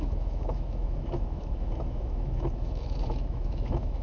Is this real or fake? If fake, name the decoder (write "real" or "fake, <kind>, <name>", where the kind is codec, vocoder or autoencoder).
fake, autoencoder, DAC-VAE